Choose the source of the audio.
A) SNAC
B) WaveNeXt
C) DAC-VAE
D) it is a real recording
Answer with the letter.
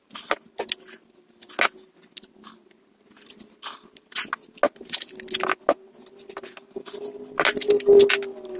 D